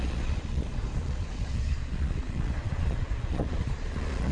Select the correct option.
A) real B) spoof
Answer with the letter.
B